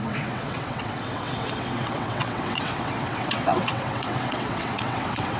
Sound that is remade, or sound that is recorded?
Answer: remade